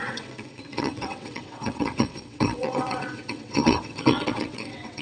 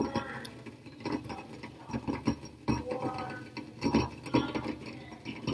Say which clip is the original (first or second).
second